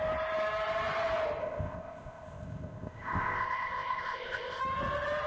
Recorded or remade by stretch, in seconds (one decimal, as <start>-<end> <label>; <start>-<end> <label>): 0.0-1.4 recorded; 1.4-4.6 remade; 4.6-5.3 recorded